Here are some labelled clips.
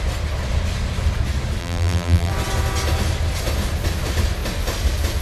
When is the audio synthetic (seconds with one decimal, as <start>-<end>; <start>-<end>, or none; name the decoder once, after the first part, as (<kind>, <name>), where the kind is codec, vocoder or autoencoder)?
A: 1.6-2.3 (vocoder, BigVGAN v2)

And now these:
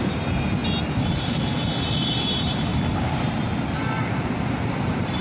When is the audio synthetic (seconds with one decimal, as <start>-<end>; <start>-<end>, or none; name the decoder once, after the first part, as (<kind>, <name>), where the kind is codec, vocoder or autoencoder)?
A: 0.0-0.6 (vocoder, BigVGAN v2); 2.3-2.7; 4.5-5.2

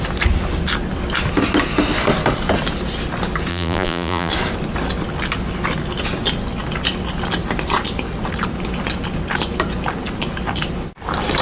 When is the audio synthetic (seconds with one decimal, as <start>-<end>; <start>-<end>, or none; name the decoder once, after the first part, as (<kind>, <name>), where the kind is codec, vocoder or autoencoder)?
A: 3.5-4.3 (vocoder, BigVGAN v2)

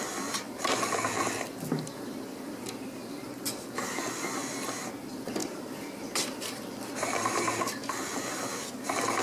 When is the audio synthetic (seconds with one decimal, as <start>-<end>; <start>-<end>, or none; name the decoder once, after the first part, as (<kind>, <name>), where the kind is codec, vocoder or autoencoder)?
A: 5.4-7.6 (vocoder, BigVGAN v2)